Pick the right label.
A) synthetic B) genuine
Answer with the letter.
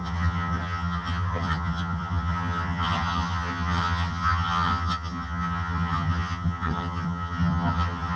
A